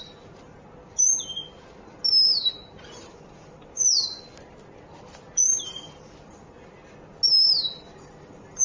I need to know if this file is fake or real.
real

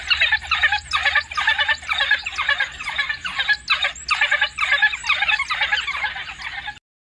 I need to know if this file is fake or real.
real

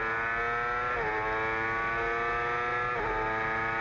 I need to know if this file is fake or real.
real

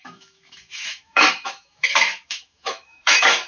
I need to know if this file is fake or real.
fake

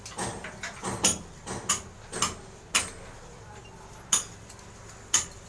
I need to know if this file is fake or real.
real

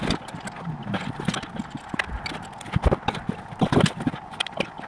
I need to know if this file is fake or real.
real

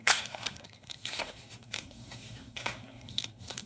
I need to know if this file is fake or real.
fake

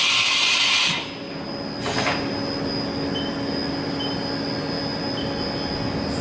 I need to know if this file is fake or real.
real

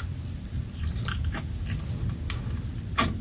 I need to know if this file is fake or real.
real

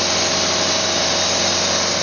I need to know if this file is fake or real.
real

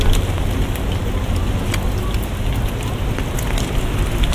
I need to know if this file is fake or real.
real